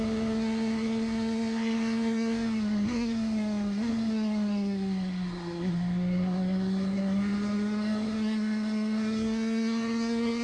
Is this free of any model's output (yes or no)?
no